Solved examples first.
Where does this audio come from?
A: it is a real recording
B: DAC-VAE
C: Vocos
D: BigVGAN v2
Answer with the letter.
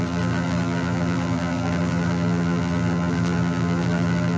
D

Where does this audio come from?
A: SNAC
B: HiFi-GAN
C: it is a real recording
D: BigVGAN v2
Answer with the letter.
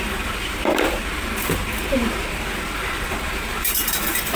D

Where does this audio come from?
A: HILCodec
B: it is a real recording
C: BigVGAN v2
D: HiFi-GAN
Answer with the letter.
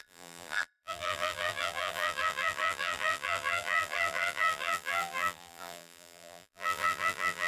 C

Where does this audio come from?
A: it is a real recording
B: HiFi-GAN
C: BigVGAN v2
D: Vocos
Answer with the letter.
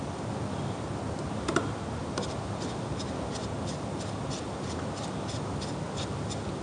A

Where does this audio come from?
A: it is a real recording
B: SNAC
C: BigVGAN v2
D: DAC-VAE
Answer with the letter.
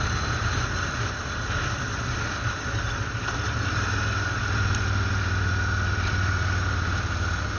C